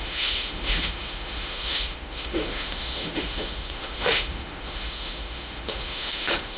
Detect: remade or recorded remade